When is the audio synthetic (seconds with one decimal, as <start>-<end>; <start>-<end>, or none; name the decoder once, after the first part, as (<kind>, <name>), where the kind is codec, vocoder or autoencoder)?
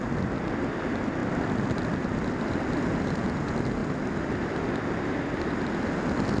1.2-2.6 (vocoder, BigVGAN v2); 3.8-4.3